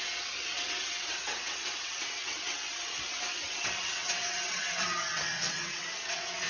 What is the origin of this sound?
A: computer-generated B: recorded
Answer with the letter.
A